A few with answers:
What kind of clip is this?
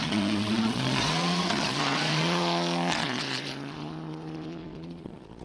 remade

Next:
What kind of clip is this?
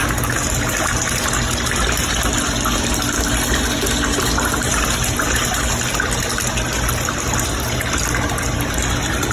recorded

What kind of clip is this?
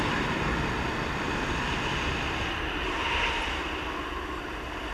recorded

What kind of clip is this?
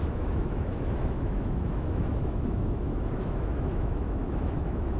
remade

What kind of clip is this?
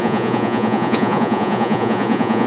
remade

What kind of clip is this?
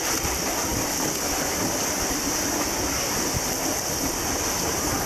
recorded